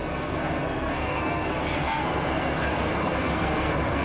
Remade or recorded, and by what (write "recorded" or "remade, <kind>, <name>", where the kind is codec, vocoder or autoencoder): remade, codec, SNAC